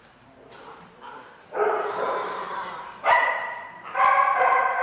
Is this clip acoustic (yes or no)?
no